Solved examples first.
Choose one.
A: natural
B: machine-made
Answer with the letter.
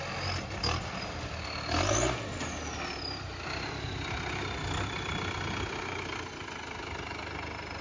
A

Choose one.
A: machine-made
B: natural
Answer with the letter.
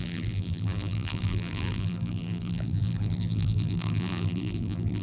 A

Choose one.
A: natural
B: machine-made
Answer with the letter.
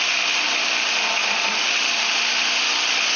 A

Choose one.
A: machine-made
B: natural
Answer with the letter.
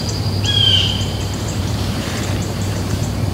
A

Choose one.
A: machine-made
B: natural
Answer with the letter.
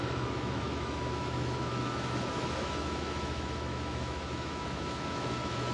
A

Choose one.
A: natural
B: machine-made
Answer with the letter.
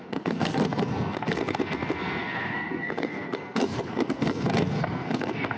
B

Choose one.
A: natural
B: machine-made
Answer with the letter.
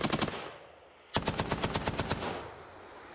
A